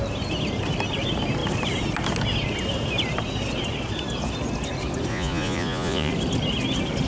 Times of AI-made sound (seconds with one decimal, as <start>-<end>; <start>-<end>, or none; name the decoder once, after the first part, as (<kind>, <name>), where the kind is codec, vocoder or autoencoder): 5.1-6.1 (vocoder, Vocos)